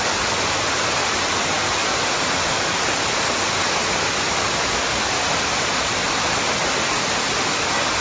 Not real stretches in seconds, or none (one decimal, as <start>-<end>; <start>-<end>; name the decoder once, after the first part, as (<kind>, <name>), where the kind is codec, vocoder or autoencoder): none